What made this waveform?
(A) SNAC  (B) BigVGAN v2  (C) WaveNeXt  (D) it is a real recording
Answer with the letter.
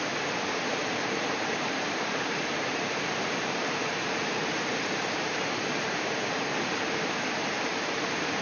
B